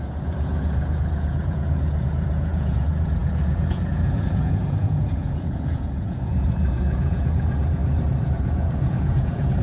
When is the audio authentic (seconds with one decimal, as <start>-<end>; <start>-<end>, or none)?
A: none